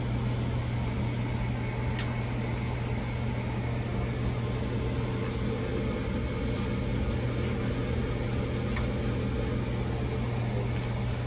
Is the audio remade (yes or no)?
no